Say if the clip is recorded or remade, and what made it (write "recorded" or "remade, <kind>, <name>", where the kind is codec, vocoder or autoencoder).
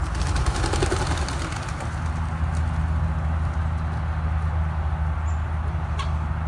recorded